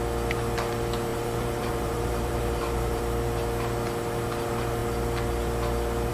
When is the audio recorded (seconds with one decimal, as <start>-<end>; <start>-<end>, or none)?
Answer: 0.0-1.1; 3.0-6.1